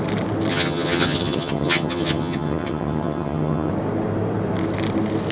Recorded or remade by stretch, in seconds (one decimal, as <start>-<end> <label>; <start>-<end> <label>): 0.0-0.5 recorded; 0.5-3.7 remade; 3.7-5.3 recorded